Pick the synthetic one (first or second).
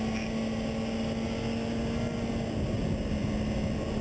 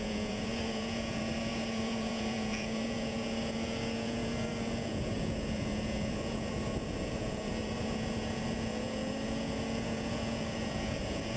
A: second